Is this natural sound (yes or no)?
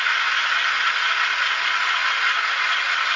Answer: yes